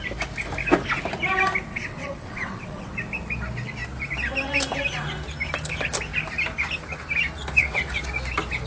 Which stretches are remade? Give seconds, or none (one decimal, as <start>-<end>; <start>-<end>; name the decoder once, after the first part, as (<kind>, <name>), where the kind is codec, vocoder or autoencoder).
1.7-2.9 (vocoder, WaveNeXt); 7.6-8.1